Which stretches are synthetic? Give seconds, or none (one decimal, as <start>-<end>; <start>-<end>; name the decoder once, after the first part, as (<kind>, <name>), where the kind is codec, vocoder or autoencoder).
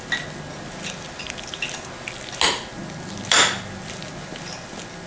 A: none